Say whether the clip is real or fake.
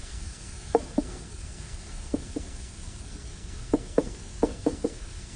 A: fake